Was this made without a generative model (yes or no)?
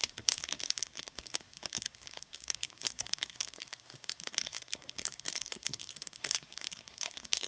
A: no